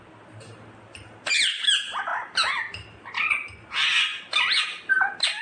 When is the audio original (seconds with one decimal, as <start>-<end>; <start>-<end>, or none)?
0.0-5.4